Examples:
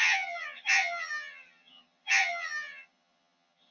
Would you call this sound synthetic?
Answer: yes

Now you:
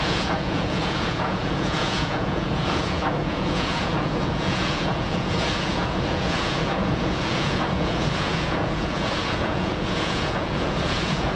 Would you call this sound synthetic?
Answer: yes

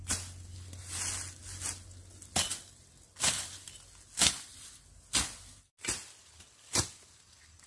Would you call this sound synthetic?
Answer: no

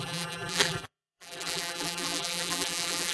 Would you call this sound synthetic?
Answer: yes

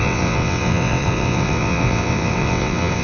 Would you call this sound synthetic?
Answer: yes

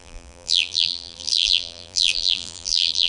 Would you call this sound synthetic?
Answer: yes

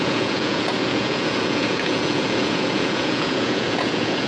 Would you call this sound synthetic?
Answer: yes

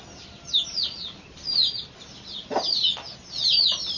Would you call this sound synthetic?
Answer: no